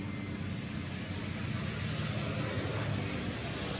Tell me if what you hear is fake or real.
real